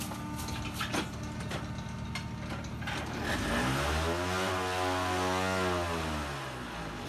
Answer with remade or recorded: recorded